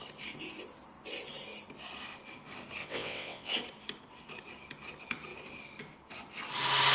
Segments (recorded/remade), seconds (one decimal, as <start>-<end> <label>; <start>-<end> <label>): 0.0-2.8 recorded; 2.8-3.5 remade; 3.5-6.9 recorded

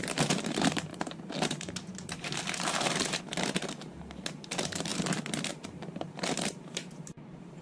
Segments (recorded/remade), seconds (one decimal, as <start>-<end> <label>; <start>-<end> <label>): 0.0-4.9 remade; 4.9-5.5 recorded; 5.5-7.6 remade

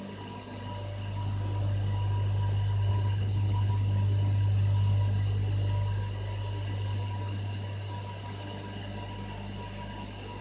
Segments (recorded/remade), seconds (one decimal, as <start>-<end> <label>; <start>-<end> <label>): 0.0-2.9 recorded; 2.9-3.7 remade; 3.7-10.4 recorded

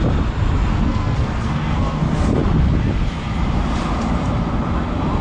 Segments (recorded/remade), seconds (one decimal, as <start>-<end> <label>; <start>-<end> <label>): 0.0-0.7 recorded; 0.7-2.0 remade; 2.0-5.2 recorded

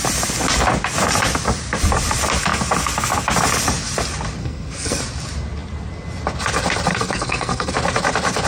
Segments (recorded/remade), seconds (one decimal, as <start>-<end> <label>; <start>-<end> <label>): 0.0-4.4 recorded; 4.4-5.0 remade; 5.0-6.9 recorded; 6.9-7.7 remade; 7.7-8.5 recorded